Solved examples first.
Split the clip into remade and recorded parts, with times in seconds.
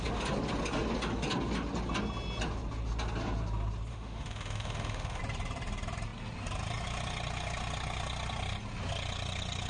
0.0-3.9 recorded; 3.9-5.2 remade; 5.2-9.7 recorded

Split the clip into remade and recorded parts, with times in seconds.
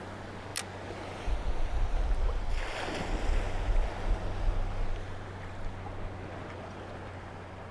0.0-7.7 recorded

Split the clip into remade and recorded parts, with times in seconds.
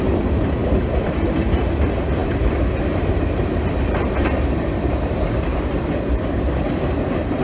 0.0-0.6 recorded; 0.6-1.2 remade; 1.2-2.2 recorded; 2.2-6.6 remade; 6.6-7.4 recorded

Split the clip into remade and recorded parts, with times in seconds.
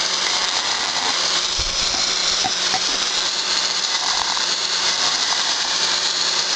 0.0-0.4 recorded; 0.4-1.8 remade; 1.8-2.2 recorded; 2.2-5.8 remade; 5.8-6.6 recorded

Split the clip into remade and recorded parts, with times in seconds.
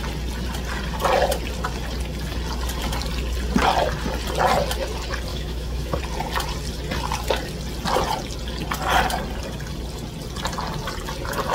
0.0-5.3 recorded; 5.3-6.0 remade; 6.0-11.5 recorded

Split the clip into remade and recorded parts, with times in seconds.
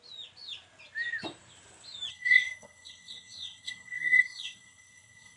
0.0-2.1 recorded; 2.1-5.4 remade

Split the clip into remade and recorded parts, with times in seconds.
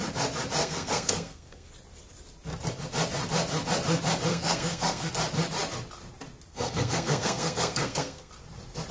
0.0-0.6 recorded; 0.6-1.7 remade; 1.7-4.3 recorded; 4.3-5.1 remade; 5.1-6.5 recorded; 6.5-8.3 remade; 8.3-8.9 recorded